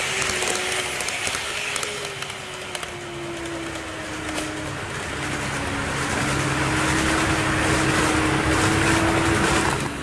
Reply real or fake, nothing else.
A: real